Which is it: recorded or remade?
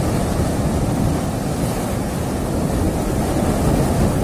recorded